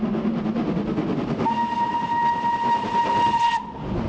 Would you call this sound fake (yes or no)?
no